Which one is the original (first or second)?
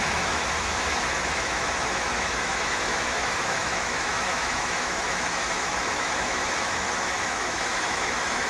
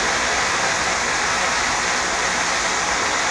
second